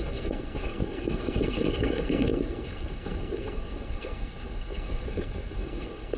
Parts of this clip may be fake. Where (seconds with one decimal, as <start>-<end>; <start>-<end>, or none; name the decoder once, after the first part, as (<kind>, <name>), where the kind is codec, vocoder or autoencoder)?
0.0-6.2 (codec, SNAC)